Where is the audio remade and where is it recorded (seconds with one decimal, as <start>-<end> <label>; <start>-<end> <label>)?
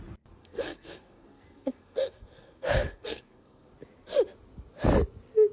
0.0-0.4 recorded; 0.4-3.7 remade; 3.7-5.5 recorded